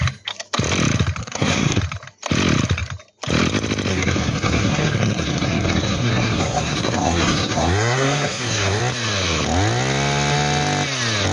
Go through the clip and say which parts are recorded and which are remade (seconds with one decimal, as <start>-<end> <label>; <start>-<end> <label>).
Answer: 0.0-1.2 recorded; 1.2-1.8 remade; 1.8-3.9 recorded; 3.9-8.8 remade; 8.8-11.3 recorded